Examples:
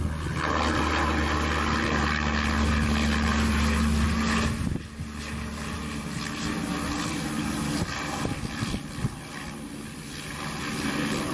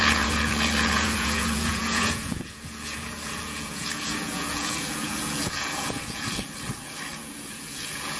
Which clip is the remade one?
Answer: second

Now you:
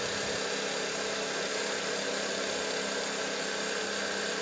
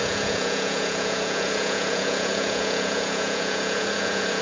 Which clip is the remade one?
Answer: second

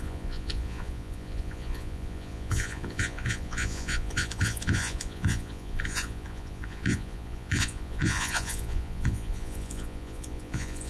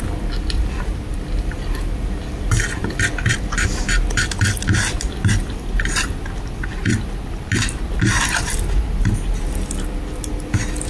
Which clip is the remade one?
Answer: first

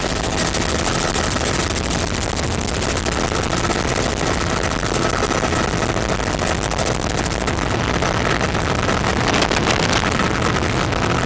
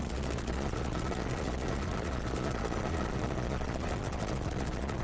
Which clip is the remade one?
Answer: second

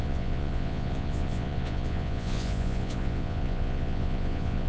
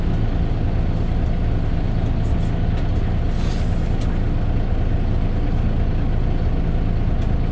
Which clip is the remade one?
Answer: first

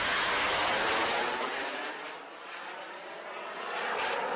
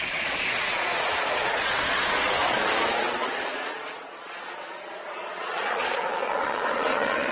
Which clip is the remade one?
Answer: second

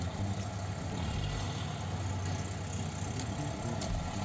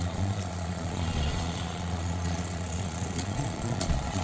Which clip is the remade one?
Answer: second